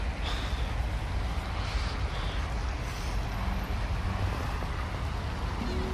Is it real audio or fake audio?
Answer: real